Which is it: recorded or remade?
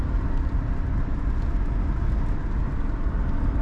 recorded